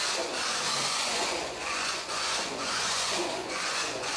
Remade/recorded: remade